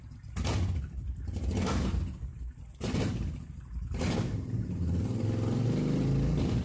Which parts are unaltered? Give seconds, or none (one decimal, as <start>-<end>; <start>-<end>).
0.0-2.3; 5.0-6.6